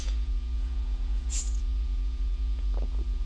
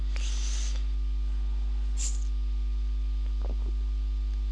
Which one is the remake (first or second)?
first